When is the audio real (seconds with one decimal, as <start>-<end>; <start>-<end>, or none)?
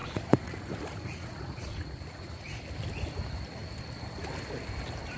2.6-5.2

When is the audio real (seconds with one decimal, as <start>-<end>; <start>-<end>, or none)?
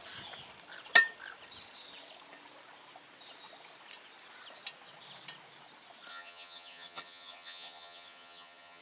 0.0-6.1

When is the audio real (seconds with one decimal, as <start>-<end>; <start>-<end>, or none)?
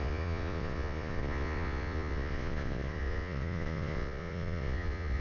none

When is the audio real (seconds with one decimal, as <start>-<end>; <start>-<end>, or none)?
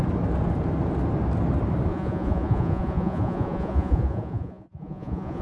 0.0-1.9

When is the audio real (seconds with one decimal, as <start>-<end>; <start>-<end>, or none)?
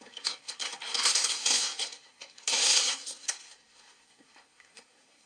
none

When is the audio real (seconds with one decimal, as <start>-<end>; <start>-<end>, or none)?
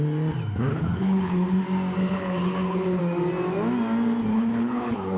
0.0-0.7; 1.6-2.0; 3.0-4.3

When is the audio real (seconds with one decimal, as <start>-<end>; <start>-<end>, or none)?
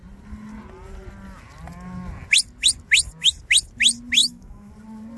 0.0-4.2; 4.7-5.2